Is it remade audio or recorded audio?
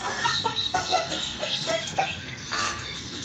remade